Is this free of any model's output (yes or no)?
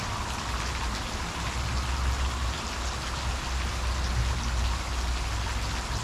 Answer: yes